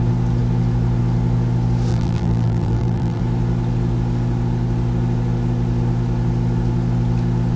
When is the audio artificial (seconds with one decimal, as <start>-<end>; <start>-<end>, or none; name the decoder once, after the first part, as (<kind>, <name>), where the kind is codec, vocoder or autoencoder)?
1.9-3.2 (vocoder, BigVGAN v2)